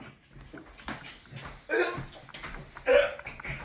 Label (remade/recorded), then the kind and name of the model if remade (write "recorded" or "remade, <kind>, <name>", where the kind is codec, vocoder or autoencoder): recorded